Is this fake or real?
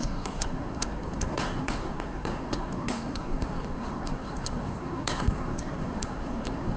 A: fake